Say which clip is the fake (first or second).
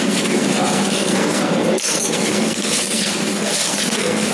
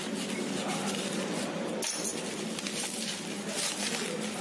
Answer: first